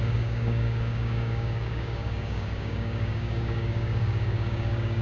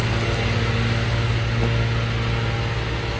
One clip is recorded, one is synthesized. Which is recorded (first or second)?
second